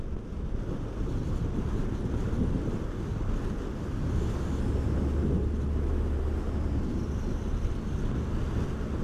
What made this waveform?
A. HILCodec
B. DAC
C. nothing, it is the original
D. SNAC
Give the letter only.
C